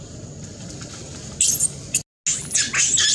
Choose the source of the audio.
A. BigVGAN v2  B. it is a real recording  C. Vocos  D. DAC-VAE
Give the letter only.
B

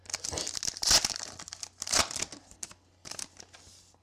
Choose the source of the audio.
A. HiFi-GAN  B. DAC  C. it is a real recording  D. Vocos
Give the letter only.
C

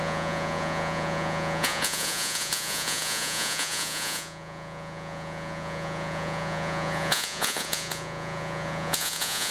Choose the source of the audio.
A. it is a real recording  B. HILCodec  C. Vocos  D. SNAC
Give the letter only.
C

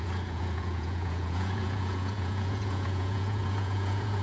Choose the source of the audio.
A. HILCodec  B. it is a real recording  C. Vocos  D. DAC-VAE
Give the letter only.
C